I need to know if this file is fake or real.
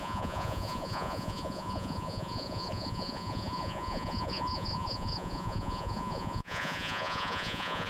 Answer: fake